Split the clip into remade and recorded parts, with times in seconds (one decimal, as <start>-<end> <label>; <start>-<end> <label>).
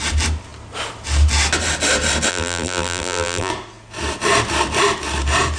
0.0-2.3 recorded; 2.3-3.5 remade; 3.5-5.6 recorded